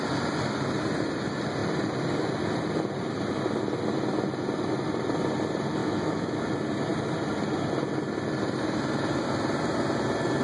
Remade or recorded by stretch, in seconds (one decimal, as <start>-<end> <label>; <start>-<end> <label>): 0.0-5.8 recorded; 5.8-6.5 remade; 6.5-10.4 recorded